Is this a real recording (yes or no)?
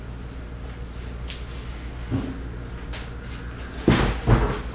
yes